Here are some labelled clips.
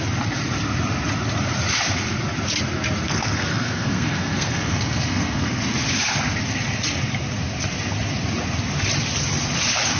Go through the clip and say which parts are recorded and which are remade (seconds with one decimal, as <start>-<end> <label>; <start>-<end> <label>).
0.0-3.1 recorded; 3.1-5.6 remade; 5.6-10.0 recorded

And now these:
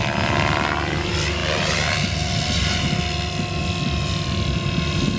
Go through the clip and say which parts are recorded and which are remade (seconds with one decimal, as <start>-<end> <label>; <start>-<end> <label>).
0.0-5.2 recorded

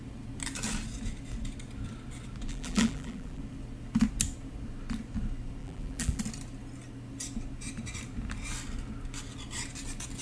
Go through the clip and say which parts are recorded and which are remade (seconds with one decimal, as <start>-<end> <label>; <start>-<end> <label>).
0.0-2.5 recorded; 2.5-3.4 remade; 3.4-5.6 recorded; 5.6-6.2 remade; 6.2-10.2 recorded

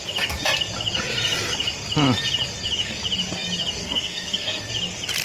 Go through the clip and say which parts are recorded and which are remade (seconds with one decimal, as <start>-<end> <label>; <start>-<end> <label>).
0.0-3.8 recorded; 3.8-4.7 remade; 4.7-5.2 recorded